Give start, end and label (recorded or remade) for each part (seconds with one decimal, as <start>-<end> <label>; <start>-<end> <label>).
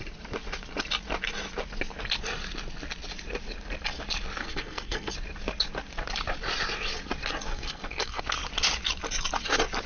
0.0-4.4 recorded; 4.4-5.1 remade; 5.1-7.5 recorded; 7.5-8.2 remade; 8.2-9.9 recorded